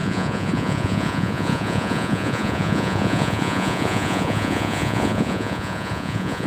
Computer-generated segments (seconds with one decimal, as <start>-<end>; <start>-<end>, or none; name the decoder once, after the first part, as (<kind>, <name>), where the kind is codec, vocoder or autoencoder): 0.0-6.5 (vocoder, Vocos)